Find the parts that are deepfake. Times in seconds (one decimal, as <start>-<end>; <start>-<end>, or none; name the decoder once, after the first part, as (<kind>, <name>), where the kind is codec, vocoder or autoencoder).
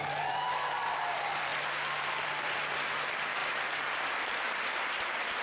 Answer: 0.0-1.5 (vocoder, BigVGAN v2); 2.4-5.4